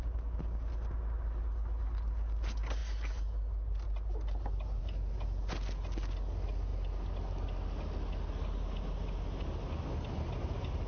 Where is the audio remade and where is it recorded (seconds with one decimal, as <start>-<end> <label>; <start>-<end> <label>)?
0.0-10.9 recorded